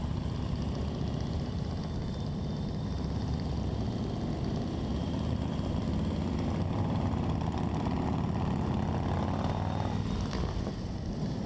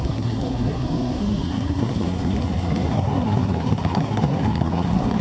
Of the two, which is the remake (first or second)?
second